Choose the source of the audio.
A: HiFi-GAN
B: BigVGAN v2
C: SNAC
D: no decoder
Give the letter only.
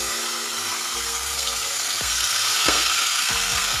C